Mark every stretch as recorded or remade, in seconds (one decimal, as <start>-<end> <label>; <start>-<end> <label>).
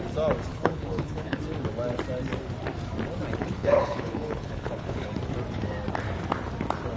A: 0.0-0.5 recorded; 0.5-1.4 remade; 1.4-3.4 recorded; 3.4-5.1 remade; 5.1-7.0 recorded